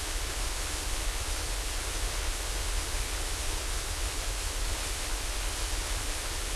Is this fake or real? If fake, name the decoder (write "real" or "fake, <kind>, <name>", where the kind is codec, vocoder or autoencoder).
fake, codec, HILCodec